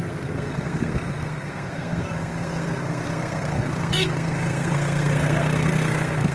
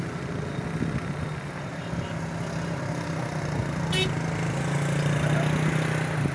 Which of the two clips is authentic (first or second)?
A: second